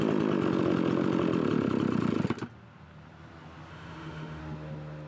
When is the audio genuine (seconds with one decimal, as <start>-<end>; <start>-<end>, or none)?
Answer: 0.0-3.7; 4.4-5.1